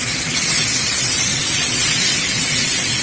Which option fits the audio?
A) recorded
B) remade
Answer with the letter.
B